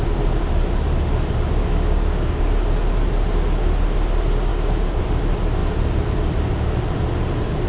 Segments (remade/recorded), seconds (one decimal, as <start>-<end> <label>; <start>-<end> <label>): 0.0-1.6 recorded; 1.6-2.5 remade; 2.5-4.5 recorded; 4.5-5.0 remade; 5.0-7.7 recorded